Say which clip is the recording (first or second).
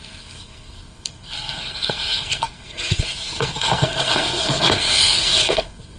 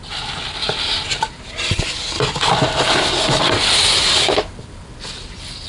second